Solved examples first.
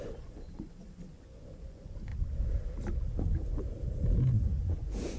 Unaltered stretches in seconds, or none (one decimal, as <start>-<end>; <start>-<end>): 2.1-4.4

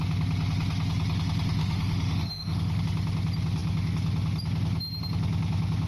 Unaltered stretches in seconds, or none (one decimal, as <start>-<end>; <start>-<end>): 0.0-1.6; 2.8-5.9

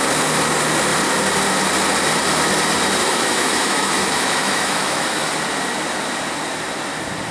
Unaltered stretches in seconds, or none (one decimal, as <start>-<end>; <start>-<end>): 0.0-3.0; 5.3-7.3